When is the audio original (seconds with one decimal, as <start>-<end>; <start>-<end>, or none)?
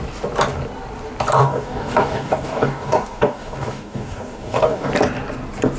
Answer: 0.0-1.4; 4.9-5.8